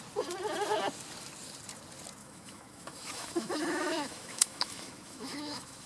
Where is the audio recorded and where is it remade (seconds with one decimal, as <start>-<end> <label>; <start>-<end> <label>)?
0.0-2.2 recorded; 2.2-5.9 remade